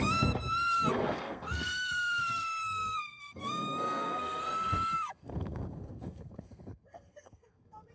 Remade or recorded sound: remade